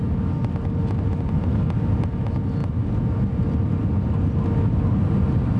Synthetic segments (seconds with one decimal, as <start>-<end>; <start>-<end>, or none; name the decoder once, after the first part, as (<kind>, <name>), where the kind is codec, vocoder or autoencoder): none